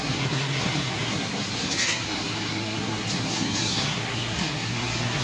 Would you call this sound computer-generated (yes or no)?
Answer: yes